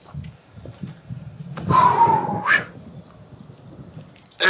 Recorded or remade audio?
recorded